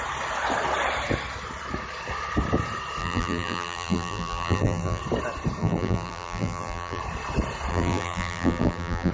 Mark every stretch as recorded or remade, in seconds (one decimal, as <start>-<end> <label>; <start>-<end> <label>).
0.0-3.0 recorded; 3.0-5.0 remade; 5.0-5.6 recorded; 5.6-7.0 remade; 7.0-7.7 recorded; 7.7-9.1 remade